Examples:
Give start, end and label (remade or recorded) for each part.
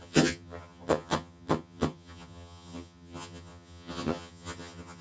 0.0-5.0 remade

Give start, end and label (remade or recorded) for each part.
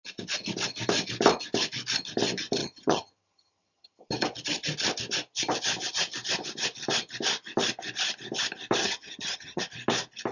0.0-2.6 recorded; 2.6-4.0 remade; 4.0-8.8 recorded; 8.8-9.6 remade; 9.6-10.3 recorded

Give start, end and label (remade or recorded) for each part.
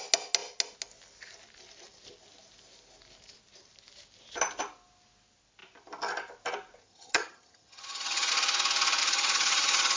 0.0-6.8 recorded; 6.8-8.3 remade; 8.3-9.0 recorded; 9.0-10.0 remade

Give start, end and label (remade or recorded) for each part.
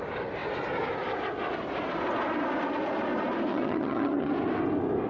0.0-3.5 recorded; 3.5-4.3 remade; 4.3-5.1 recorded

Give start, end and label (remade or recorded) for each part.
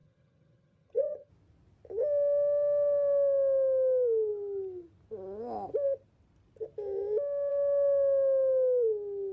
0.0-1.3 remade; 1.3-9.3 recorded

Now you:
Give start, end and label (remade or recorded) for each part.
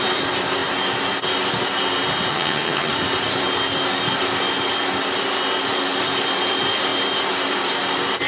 0.0-2.3 recorded; 2.3-2.9 remade; 2.9-8.3 recorded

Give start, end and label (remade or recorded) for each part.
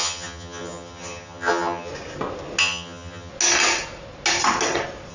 0.0-1.9 remade; 1.9-2.6 recorded; 2.6-3.3 remade; 3.3-5.1 recorded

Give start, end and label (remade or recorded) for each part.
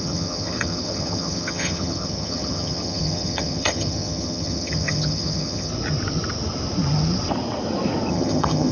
0.0-5.7 remade; 5.7-8.1 recorded; 8.1-8.7 remade